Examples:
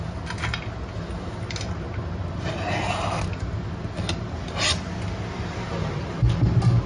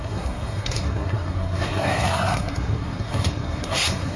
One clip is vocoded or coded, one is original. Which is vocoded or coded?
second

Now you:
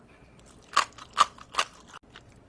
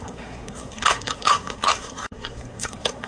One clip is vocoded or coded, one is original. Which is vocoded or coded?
second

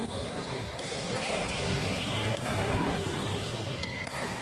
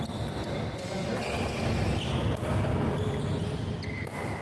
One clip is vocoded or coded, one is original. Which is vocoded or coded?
first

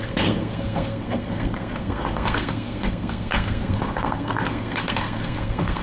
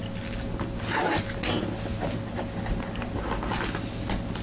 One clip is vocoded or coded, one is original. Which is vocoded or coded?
first